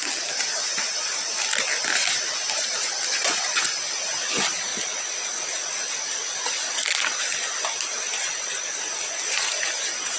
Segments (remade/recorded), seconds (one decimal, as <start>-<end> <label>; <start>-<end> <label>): 0.0-10.2 recorded

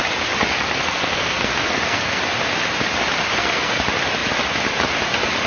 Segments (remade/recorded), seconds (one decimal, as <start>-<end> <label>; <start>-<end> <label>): 0.0-0.5 recorded; 0.5-2.2 remade; 2.2-3.3 recorded; 3.3-3.8 remade; 3.8-5.5 recorded

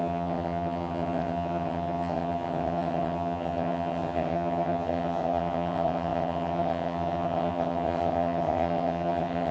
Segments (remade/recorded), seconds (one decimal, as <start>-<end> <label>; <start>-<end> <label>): 0.0-9.5 remade

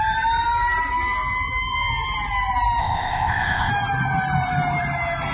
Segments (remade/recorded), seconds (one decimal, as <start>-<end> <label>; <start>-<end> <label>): 0.0-2.8 recorded; 2.8-3.7 remade; 3.7-5.3 recorded

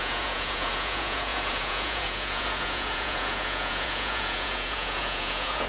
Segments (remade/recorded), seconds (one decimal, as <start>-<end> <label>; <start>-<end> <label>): 0.0-5.7 remade

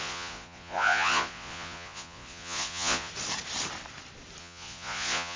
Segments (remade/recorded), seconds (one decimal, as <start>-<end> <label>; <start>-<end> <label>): 0.0-3.1 remade; 3.1-4.4 recorded; 4.4-5.4 remade

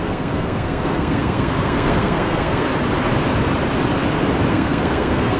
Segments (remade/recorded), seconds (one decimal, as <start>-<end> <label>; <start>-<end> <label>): 0.0-2.7 remade; 2.7-4.5 recorded; 4.5-5.4 remade

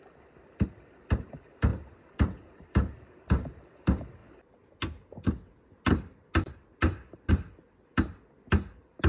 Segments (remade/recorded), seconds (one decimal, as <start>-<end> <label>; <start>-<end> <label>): 0.0-1.7 recorded; 1.7-3.1 remade; 3.1-9.1 recorded